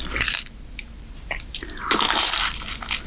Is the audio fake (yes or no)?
yes